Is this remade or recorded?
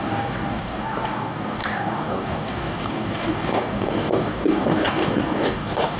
remade